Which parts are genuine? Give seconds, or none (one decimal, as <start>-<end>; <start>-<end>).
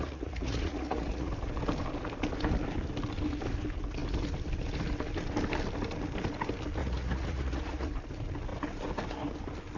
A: 1.3-6.8; 7.9-9.8